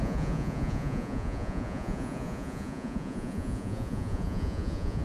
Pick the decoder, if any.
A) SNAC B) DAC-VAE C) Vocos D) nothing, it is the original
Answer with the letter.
C